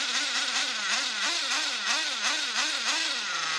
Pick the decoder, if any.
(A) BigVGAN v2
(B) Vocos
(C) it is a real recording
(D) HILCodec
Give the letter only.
C